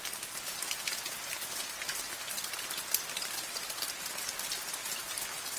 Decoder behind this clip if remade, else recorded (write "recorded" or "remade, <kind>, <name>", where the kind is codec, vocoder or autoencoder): recorded